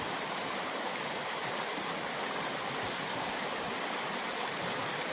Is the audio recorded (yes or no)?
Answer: yes